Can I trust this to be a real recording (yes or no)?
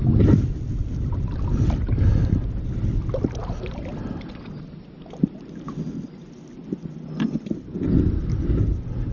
yes